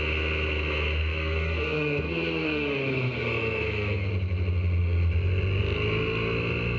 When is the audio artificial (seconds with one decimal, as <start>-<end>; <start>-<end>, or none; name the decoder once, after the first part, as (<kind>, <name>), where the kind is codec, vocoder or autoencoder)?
1.0-4.1 (codec, SNAC)

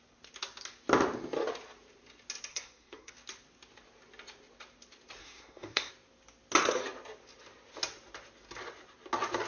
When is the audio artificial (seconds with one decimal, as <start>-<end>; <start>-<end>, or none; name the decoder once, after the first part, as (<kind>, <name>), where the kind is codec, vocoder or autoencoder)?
2.5-3.1 (codec, SNAC); 5.2-5.9

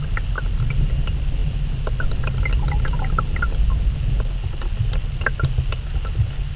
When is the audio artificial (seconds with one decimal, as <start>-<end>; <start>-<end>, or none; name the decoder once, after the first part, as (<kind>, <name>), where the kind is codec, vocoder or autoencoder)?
none

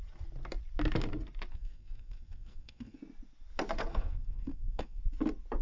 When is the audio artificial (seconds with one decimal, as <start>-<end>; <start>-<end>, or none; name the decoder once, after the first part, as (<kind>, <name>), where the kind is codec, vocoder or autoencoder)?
1.5-3.0 (codec, SNAC); 3.9-5.0